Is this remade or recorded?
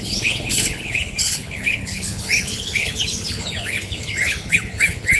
remade